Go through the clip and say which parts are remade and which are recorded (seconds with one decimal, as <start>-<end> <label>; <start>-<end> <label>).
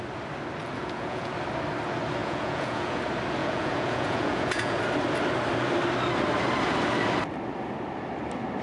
0.0-0.6 recorded; 0.6-1.3 remade; 1.3-2.2 recorded; 2.2-3.0 remade; 3.0-3.4 recorded; 3.4-4.8 remade; 4.8-8.6 recorded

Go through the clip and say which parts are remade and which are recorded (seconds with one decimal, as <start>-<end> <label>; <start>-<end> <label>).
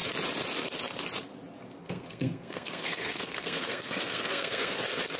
0.0-1.8 recorded; 1.8-4.8 remade; 4.8-5.2 recorded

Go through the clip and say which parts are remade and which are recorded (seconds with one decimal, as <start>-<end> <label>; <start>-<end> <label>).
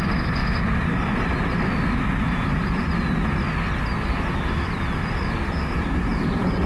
0.0-6.7 recorded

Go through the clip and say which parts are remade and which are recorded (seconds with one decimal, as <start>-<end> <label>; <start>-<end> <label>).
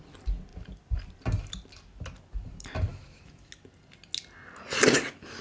0.0-2.9 recorded; 2.9-3.5 remade; 3.5-5.4 recorded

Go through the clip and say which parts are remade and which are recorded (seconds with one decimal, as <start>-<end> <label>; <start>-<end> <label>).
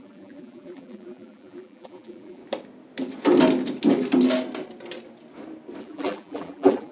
0.0-2.4 remade; 2.4-5.8 recorded; 5.8-6.9 remade